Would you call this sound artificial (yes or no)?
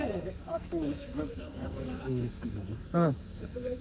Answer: yes